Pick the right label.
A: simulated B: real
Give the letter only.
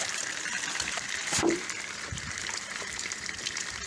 A